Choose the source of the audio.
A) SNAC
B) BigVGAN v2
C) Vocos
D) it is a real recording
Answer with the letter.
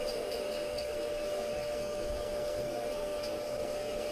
A